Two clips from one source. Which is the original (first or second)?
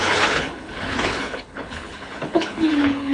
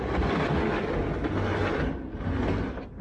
second